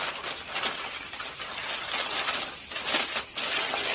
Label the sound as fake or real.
real